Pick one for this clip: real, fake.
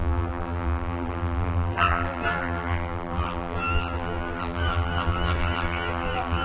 fake